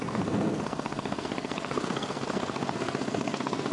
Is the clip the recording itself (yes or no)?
no